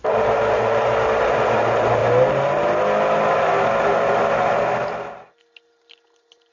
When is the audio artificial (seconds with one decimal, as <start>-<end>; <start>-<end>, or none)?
none